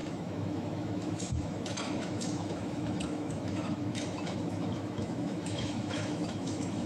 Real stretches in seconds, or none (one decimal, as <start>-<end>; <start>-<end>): none